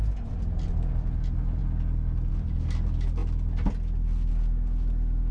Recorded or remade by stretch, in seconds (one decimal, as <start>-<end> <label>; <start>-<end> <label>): 0.0-5.3 recorded